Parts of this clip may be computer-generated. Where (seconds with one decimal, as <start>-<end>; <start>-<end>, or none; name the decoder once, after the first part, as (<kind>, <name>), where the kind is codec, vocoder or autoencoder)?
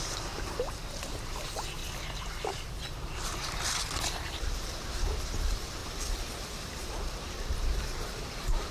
0.0-1.8 (vocoder, BigVGAN v2); 4.1-5.8; 7.3-8.7